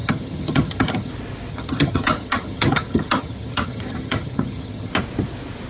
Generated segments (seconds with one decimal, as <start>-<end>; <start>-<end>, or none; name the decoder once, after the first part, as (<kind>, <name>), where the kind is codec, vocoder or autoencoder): 0.0-1.1 (vocoder, HiFi-GAN); 1.5-4.9